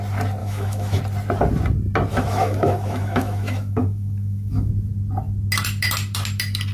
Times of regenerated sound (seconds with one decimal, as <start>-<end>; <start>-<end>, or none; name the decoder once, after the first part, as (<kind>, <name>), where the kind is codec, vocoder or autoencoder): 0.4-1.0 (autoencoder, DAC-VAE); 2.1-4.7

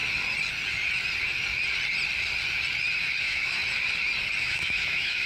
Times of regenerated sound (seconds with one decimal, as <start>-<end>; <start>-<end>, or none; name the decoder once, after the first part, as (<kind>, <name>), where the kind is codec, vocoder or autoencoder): 3.2-3.6 (autoencoder, DAC-VAE); 4.4-5.3

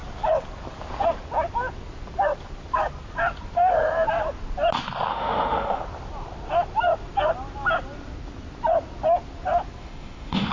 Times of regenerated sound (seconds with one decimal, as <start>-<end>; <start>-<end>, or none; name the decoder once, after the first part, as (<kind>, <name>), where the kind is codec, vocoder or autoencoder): 5.1-5.8 (autoencoder, DAC-VAE); 9.8-10.5